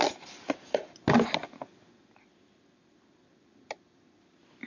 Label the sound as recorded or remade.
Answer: recorded